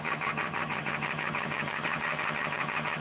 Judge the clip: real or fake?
fake